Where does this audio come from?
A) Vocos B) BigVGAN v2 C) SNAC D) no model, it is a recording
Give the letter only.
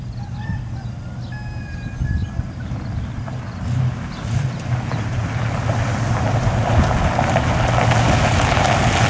D